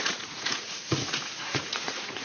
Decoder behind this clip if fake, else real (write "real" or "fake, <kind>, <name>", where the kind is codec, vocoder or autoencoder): fake, vocoder, Vocos